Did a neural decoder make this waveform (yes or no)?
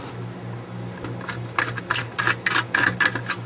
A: no